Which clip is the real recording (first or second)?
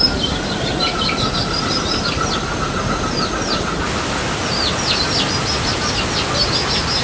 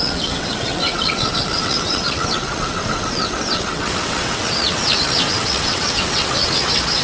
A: first